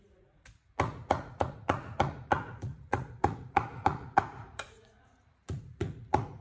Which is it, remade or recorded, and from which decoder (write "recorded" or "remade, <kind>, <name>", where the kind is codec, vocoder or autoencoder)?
remade, vocoder, Vocos